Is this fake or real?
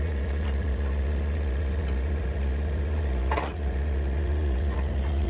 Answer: fake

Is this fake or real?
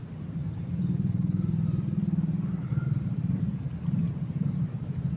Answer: real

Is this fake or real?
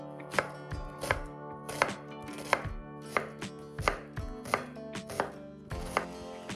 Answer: real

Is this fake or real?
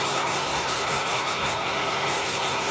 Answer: fake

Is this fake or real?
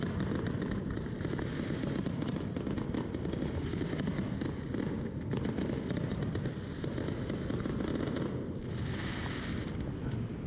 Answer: real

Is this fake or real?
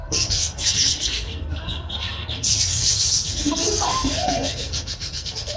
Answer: fake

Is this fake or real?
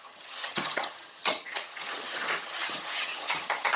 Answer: fake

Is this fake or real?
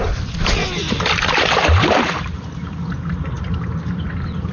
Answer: real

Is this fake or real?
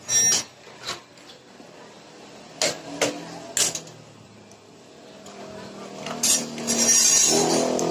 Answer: real